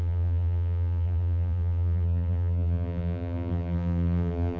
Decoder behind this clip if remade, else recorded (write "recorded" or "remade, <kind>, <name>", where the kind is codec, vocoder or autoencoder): remade, vocoder, BigVGAN v2